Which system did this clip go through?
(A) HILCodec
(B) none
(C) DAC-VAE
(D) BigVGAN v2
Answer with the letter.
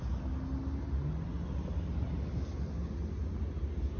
B